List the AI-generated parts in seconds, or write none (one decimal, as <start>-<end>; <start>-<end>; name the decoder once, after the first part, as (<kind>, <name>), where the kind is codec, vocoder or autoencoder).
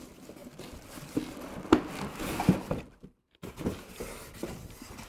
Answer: none